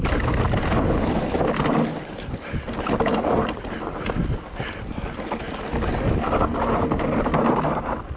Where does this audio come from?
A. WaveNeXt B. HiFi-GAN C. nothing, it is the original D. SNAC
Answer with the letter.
C